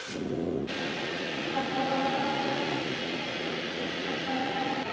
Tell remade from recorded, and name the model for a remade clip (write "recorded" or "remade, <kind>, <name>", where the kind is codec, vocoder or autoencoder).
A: remade, vocoder, Vocos